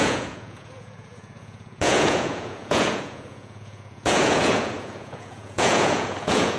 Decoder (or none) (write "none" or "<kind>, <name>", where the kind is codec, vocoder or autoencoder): vocoder, Vocos